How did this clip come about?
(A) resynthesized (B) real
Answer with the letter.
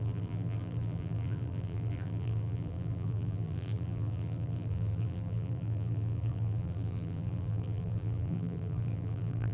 A